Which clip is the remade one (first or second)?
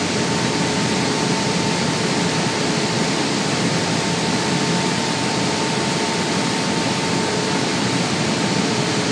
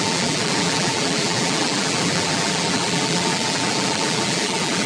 second